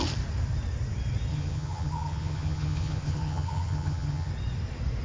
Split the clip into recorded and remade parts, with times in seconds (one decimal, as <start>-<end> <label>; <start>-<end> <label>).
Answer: 0.0-1.3 recorded; 1.3-4.3 remade; 4.3-5.0 recorded

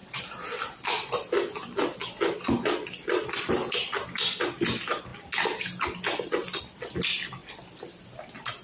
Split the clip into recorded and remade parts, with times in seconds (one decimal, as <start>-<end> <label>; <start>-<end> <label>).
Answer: 0.0-3.5 remade; 3.5-8.6 recorded